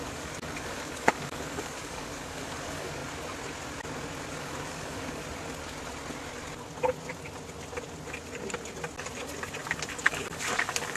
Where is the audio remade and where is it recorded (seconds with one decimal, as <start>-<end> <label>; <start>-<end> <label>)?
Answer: 0.0-3.0 remade; 3.0-4.3 recorded; 4.3-5.2 remade; 5.2-10.1 recorded; 10.1-11.0 remade